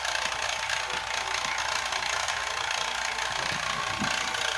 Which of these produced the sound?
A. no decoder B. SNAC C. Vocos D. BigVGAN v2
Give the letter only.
A